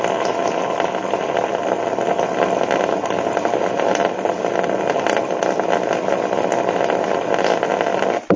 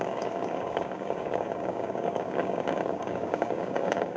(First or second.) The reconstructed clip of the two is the second